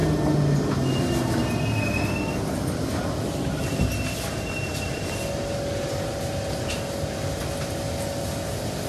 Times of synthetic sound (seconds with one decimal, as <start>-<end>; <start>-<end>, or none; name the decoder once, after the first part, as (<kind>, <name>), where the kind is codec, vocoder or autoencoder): none